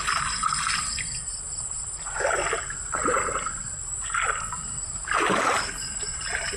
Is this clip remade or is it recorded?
recorded